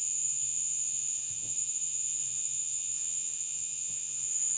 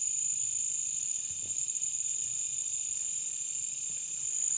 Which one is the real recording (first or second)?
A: second